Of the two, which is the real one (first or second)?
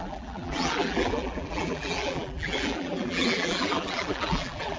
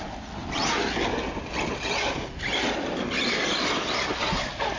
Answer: second